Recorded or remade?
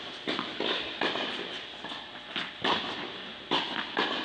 recorded